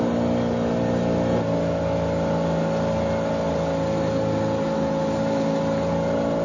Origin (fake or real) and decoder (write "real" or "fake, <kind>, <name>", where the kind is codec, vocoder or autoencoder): real